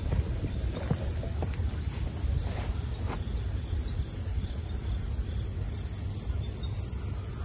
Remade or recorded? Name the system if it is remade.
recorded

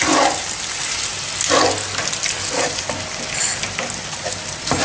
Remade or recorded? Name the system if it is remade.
recorded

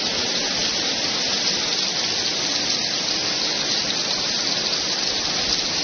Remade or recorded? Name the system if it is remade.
recorded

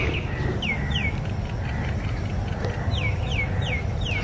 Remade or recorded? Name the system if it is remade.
recorded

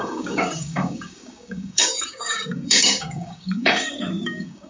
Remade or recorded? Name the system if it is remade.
remade, codec, DAC